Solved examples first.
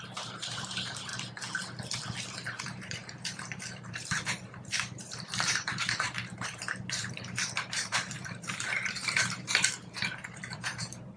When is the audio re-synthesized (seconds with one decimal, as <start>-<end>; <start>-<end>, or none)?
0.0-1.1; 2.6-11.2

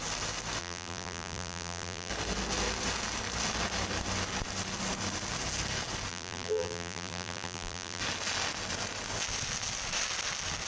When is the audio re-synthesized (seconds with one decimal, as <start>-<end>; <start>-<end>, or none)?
0.6-2.1; 6.1-8.0

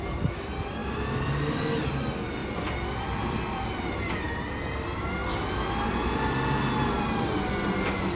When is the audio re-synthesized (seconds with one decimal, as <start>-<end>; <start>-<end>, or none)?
0.8-1.6; 2.4-3.9

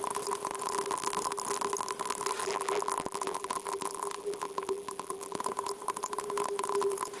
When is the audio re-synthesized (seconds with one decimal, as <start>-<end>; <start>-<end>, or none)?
2.4-5.4

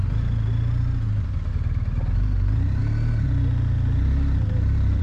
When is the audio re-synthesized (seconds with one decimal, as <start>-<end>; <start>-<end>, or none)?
none

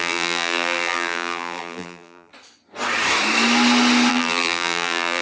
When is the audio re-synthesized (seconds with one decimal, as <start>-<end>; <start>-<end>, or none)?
0.0-2.3; 4.1-5.2

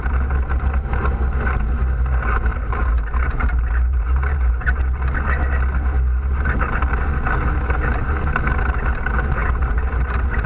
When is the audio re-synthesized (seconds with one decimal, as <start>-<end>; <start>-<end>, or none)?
2.5-4.5; 9.4-10.5